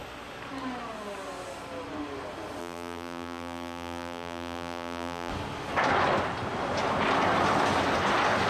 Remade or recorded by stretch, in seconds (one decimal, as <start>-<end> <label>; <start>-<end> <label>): 0.0-2.6 recorded; 2.6-5.3 remade; 5.3-8.5 recorded